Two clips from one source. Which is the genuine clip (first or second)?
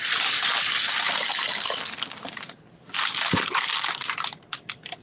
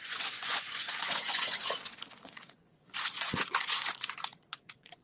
first